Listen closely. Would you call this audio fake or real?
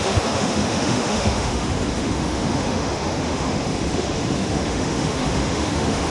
fake